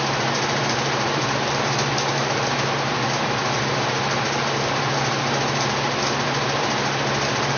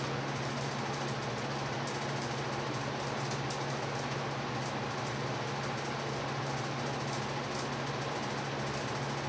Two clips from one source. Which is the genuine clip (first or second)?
second